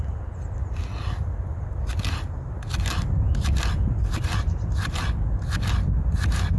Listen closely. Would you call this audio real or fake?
real